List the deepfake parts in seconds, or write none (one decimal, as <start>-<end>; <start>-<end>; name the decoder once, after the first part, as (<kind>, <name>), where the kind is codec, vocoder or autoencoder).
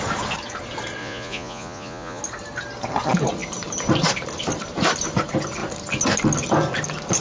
1.0-2.2 (vocoder, Vocos)